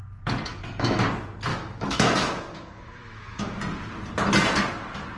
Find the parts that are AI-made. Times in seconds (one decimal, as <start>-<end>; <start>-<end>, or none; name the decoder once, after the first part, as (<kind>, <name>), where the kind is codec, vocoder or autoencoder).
0.5-1.0 (autoencoder, DAC-VAE); 1.5-3.6